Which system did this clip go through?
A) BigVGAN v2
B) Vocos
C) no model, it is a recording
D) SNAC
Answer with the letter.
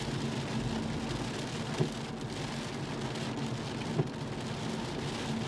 C